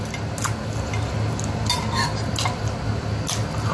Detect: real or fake real